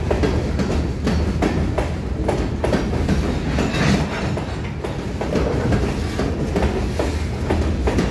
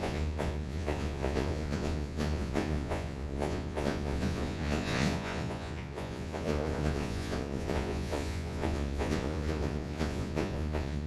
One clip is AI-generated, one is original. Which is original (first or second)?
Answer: first